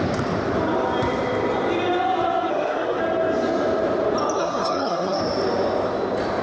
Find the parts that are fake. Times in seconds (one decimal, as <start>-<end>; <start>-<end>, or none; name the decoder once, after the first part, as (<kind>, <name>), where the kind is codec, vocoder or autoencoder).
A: 2.5-3.0 (codec, SNAC); 4.4-5.2